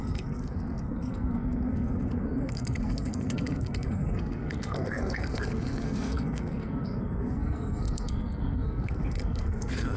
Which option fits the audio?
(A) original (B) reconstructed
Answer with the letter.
B